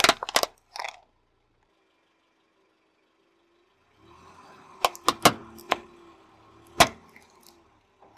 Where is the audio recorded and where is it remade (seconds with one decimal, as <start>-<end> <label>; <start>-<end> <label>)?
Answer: 0.0-8.2 recorded